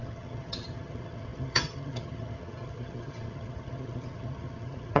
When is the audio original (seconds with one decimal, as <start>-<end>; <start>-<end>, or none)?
none